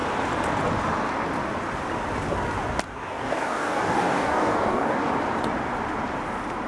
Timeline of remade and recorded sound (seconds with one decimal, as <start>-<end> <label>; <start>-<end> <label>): 0.0-2.9 recorded; 2.9-5.1 remade; 5.1-6.7 recorded